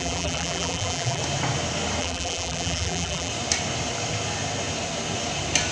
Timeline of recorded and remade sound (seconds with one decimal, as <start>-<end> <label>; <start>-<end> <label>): 0.0-1.2 remade; 1.2-2.0 recorded; 2.0-3.3 remade; 3.3-5.7 recorded

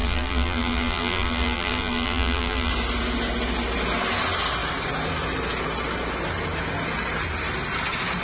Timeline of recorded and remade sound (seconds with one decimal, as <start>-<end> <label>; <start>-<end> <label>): 0.0-2.7 remade; 2.7-8.2 recorded

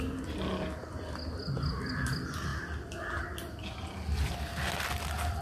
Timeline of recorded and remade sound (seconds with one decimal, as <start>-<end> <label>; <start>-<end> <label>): 0.0-5.4 recorded

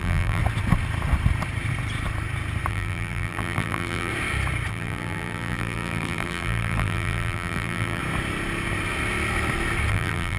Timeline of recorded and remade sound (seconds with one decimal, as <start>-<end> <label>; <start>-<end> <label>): 0.0-0.4 remade; 0.4-2.7 recorded; 2.7-4.1 remade; 4.1-4.7 recorded; 4.7-8.0 remade; 8.0-9.9 recorded; 9.9-10.4 remade